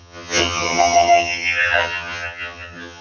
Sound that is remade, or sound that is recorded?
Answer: remade